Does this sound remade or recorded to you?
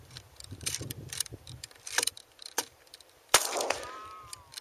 remade